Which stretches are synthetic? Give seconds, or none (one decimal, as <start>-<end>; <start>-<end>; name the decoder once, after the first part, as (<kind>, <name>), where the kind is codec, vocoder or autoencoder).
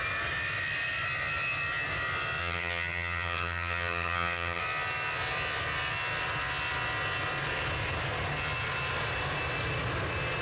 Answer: 2.4-4.6 (vocoder, HiFi-GAN)